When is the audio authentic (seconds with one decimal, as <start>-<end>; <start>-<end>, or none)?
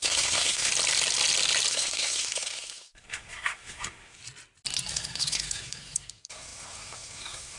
0.7-1.7; 4.2-4.9